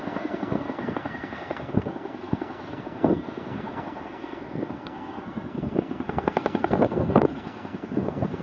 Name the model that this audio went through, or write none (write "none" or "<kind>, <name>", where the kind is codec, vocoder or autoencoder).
codec, SNAC